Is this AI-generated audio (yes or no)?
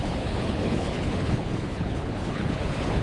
yes